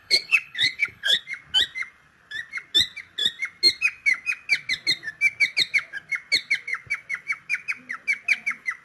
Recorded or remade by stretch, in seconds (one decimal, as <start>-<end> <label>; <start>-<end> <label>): 0.0-1.2 remade; 1.2-8.8 recorded